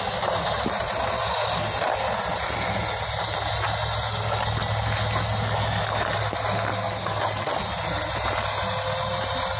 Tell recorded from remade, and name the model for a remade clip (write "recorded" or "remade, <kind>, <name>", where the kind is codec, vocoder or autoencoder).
recorded